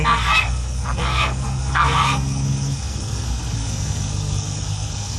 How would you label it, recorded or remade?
remade